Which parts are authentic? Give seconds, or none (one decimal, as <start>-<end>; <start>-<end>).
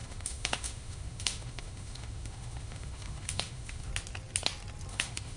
3.9-4.9